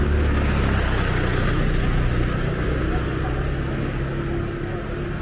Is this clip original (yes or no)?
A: yes